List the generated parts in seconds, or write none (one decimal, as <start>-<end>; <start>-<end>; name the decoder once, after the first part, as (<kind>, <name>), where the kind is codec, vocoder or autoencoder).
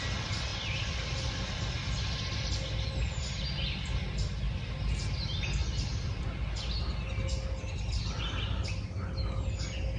none